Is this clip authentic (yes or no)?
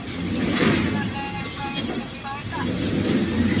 yes